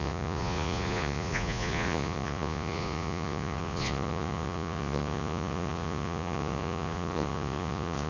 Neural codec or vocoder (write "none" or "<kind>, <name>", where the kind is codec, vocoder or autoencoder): vocoder, Vocos